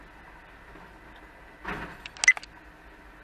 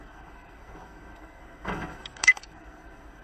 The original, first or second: first